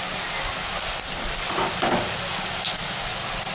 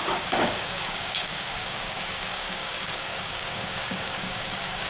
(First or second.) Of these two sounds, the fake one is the second